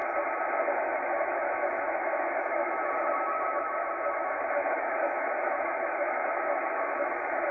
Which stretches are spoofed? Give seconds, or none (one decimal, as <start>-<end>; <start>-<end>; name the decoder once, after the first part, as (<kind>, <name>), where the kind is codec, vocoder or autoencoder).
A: 0.8-7.5 (autoencoder, DAC-VAE)